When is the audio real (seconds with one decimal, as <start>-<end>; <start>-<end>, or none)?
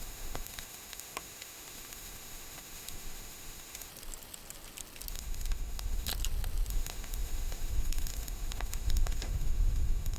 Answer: 3.9-5.1; 6.1-6.7